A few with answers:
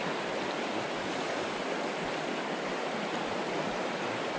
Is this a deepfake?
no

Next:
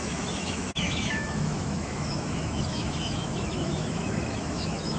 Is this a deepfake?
yes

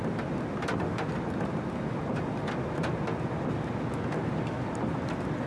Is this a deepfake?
no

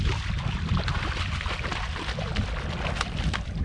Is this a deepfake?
no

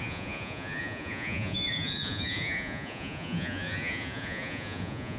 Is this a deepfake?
yes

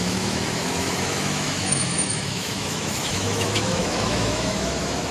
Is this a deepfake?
yes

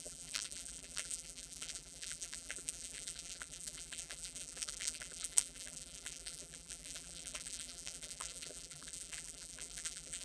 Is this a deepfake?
yes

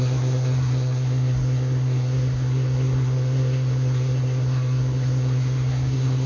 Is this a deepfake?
yes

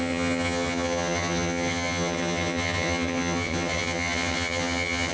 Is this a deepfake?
yes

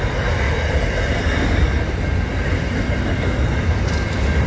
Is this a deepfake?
no